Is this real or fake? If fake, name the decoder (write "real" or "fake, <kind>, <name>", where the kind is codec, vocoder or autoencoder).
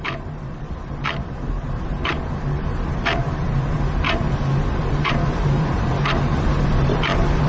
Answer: fake, vocoder, BigVGAN v2